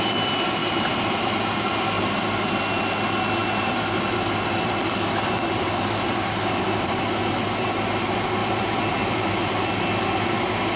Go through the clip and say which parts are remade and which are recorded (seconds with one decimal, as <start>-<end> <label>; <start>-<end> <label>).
0.0-0.6 recorded; 0.6-1.3 remade; 1.3-3.4 recorded; 3.4-7.0 remade; 7.0-8.4 recorded; 8.4-9.3 remade; 9.3-10.8 recorded